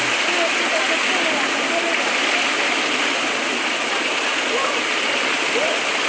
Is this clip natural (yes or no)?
yes